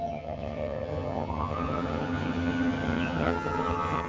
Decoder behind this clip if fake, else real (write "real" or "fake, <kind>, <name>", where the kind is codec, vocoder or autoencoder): fake, vocoder, HiFi-GAN